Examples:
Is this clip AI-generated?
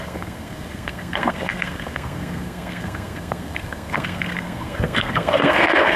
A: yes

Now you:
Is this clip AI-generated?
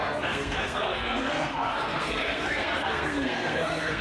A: yes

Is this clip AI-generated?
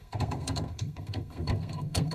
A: yes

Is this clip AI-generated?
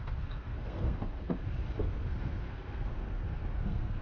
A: yes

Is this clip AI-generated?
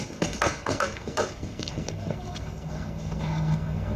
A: yes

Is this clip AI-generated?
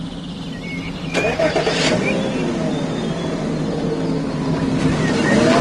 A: no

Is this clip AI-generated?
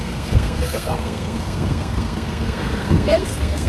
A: yes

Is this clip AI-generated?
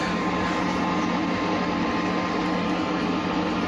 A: no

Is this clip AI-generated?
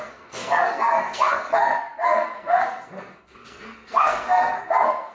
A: yes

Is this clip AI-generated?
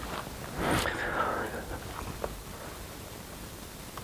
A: no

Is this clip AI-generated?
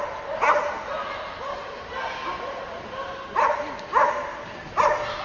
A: no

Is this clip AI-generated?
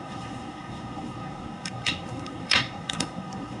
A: yes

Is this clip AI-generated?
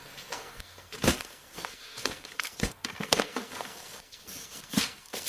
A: yes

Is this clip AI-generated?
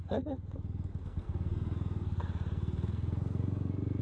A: yes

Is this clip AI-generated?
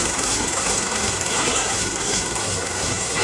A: yes